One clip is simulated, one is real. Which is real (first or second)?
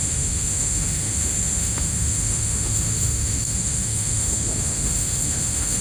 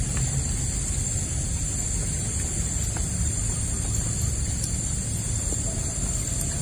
second